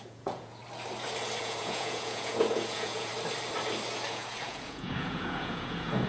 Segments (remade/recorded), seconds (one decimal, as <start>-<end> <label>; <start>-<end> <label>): 0.0-0.6 remade; 0.6-1.4 recorded; 1.4-3.1 remade; 3.1-4.1 recorded; 4.1-6.1 remade